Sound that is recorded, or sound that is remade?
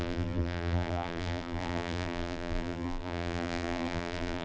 remade